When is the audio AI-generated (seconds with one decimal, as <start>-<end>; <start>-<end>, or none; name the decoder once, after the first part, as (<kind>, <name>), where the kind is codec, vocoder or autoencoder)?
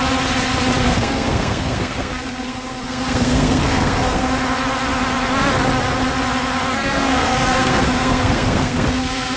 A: 0.8-4.3 (codec, SNAC); 6.7-9.4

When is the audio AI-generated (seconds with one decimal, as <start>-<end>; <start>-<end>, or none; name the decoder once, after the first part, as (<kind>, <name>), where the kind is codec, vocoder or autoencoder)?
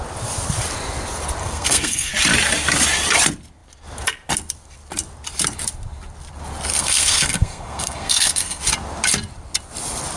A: 1.4-2.1 (codec, SNAC); 6.7-8.6